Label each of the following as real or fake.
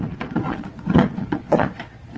fake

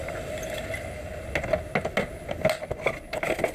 real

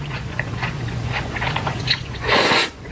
fake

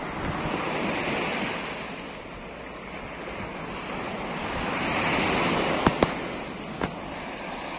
real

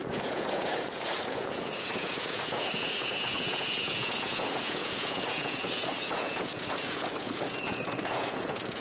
fake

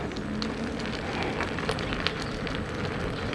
real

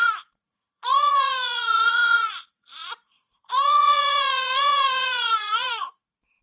fake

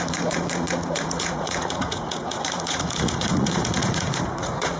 fake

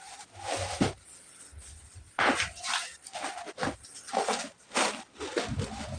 real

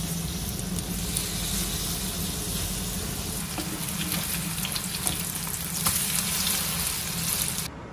real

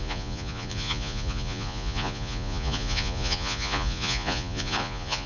fake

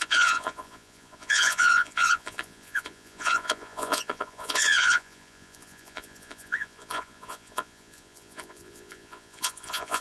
fake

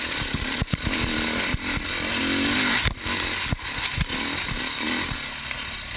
real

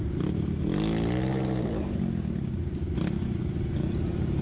real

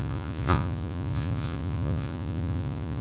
fake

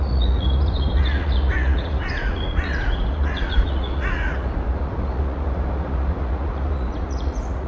fake